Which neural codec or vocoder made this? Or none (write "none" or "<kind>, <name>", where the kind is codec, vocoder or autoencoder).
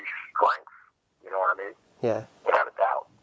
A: vocoder, Vocos